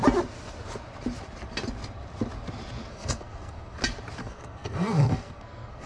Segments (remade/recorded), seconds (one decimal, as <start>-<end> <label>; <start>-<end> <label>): 0.0-2.9 recorded; 2.9-3.8 remade; 3.8-4.2 recorded; 4.2-5.9 remade